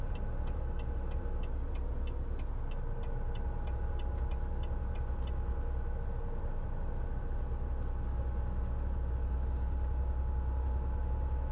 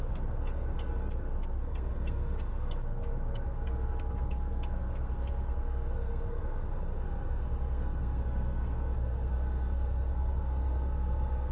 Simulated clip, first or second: second